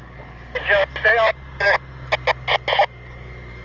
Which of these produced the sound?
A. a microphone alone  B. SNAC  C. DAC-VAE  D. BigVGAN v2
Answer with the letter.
A